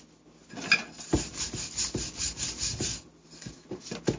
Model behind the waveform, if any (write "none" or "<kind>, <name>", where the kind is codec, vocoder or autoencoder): none